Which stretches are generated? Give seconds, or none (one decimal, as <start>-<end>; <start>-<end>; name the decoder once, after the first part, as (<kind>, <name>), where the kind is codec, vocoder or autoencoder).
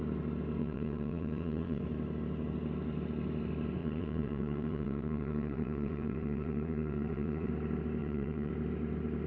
0.6-1.8 (vocoder, WaveNeXt); 3.8-7.5; 8.0-8.5